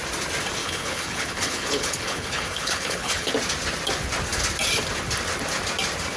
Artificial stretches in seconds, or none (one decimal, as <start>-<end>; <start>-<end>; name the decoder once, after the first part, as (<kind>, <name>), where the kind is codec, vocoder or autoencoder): 0.6-3.3 (codec, HILCodec)

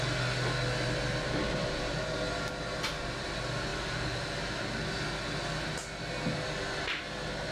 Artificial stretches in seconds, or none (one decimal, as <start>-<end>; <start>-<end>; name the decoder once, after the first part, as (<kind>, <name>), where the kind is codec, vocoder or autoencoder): none